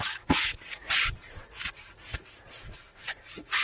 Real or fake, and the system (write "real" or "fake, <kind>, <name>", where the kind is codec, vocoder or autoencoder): fake, vocoder, Vocos